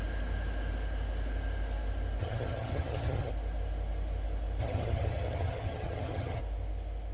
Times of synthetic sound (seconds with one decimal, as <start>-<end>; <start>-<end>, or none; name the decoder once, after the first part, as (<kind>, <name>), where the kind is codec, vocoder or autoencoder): 2.2-3.3 (vocoder, HiFi-GAN); 4.6-6.4